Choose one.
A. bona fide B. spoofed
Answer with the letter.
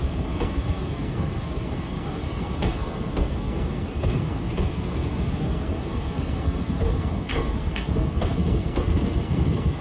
B